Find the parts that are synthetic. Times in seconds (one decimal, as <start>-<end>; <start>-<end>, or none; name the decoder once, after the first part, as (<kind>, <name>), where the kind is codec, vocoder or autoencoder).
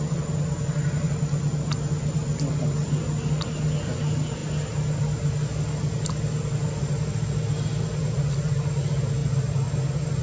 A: none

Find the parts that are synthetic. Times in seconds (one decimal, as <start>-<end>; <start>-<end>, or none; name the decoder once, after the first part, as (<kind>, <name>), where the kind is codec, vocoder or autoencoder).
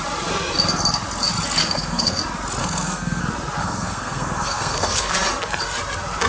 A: 1.6-2.2 (codec, SNAC); 2.6-3.2; 3.6-5.1